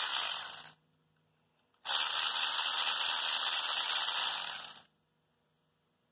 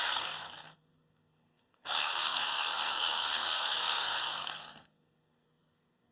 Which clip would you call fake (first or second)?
second